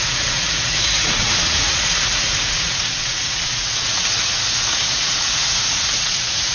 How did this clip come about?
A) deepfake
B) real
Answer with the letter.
A